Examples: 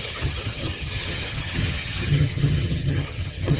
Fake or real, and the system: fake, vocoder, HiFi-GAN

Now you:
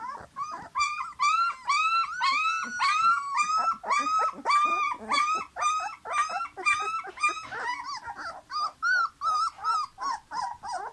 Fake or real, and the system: real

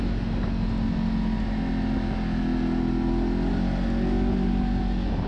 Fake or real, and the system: real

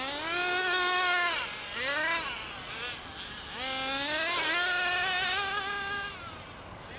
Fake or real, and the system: real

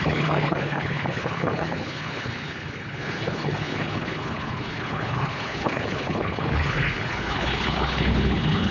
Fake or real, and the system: fake, codec, HILCodec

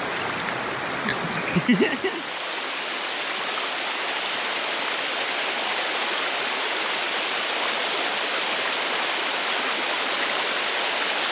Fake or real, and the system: real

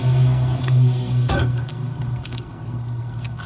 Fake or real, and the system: fake, codec, SNAC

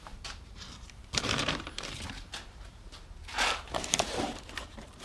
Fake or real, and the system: fake, vocoder, BigVGAN v2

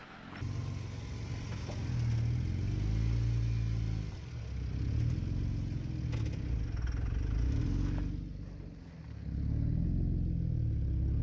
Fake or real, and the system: real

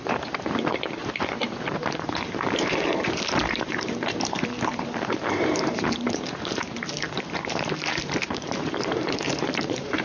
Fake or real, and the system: fake, vocoder, BigVGAN v2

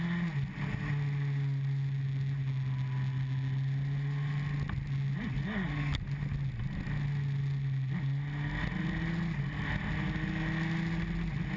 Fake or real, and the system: real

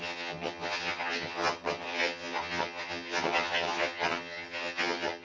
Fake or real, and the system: fake, vocoder, HiFi-GAN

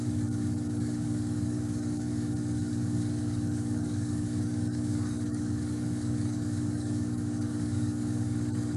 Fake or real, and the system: fake, codec, DAC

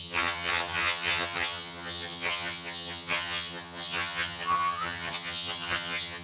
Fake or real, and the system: fake, vocoder, HiFi-GAN